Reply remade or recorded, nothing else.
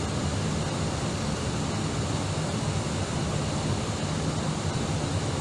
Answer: recorded